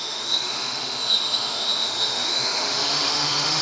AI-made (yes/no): yes